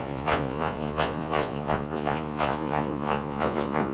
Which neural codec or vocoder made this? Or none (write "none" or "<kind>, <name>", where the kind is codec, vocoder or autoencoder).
vocoder, Vocos